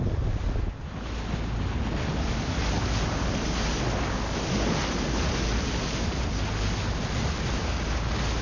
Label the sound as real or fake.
real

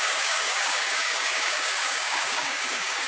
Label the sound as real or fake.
fake